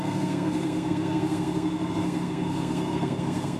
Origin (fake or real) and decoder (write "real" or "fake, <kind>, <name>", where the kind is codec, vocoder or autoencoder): fake, codec, SNAC